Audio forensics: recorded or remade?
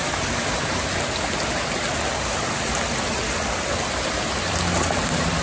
recorded